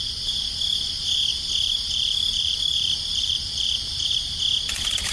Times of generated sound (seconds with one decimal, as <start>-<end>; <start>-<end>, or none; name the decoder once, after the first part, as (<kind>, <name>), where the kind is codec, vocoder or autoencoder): 1.3-4.4 (vocoder, BigVGAN v2)